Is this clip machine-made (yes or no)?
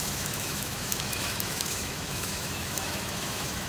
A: yes